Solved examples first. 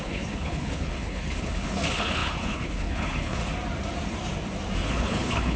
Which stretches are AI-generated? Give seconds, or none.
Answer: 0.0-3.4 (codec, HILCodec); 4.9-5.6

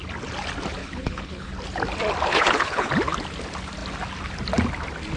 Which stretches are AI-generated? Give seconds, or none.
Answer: 0.8-1.5 (codec, HILCodec); 2.3-2.9